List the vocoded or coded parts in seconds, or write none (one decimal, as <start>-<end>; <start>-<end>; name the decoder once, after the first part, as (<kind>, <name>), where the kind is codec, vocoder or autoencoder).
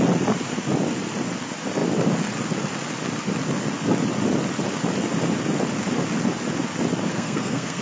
7.1-7.8 (codec, SNAC)